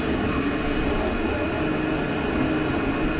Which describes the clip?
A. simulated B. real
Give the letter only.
B